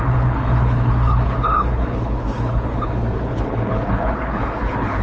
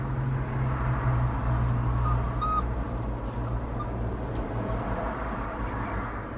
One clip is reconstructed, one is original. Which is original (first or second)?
second